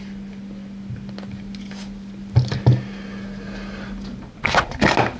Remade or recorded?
recorded